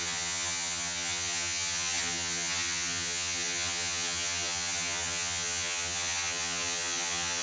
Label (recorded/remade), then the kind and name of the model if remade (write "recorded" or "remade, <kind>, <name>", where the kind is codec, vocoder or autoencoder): remade, vocoder, HiFi-GAN